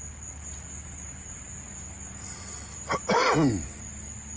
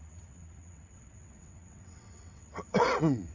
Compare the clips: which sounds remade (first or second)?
second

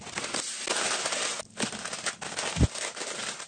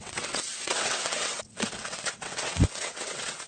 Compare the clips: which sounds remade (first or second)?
second